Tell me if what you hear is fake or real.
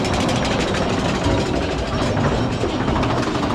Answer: real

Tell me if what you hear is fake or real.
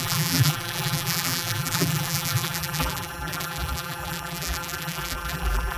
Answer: fake